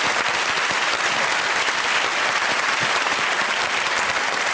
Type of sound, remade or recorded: recorded